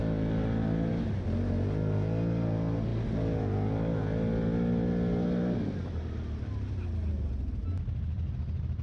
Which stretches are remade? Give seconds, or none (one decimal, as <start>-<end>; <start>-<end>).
none